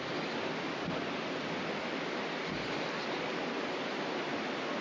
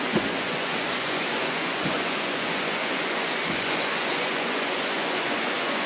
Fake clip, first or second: second